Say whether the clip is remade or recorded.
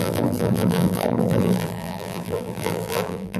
remade